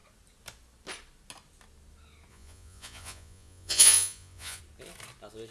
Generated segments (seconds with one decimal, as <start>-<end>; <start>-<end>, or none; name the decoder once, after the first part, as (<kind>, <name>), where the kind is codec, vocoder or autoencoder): 2.3-4.6 (vocoder, Vocos)